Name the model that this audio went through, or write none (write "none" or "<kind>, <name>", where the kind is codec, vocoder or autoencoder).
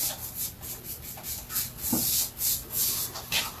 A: none